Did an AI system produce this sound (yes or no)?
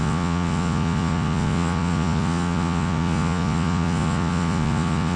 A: yes